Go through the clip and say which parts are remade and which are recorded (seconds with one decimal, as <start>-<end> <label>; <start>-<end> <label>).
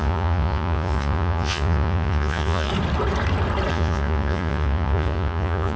0.0-2.7 remade; 2.7-3.7 recorded; 3.7-5.8 remade